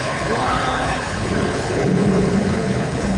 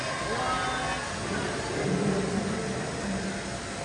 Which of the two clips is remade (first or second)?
first